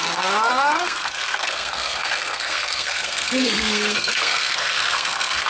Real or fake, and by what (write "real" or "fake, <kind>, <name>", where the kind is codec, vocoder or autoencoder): fake, codec, SNAC